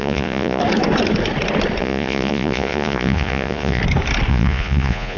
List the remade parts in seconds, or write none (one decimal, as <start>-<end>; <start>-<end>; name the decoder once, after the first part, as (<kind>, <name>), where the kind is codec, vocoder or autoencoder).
0.0-0.6 (vocoder, Vocos); 1.8-3.8; 4.3-5.2